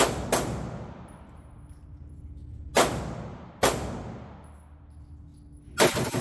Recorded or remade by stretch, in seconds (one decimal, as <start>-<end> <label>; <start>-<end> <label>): 0.0-6.2 recorded